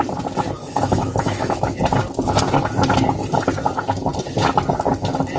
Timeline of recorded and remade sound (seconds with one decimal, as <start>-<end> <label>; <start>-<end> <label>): 0.0-0.6 recorded; 0.6-1.7 remade; 1.7-5.4 recorded